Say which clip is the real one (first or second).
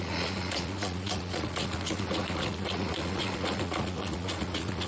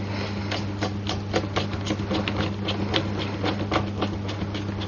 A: second